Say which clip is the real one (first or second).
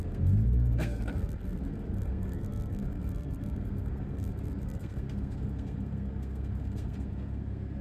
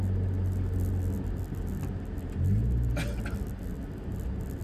second